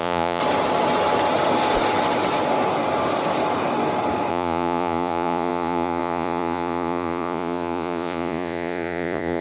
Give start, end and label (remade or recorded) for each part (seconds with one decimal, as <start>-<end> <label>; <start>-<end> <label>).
0.0-0.4 remade; 0.4-4.3 recorded; 4.3-9.4 remade